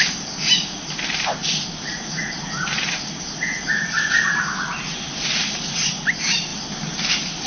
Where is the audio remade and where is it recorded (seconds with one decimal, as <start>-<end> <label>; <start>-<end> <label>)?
0.0-7.5 recorded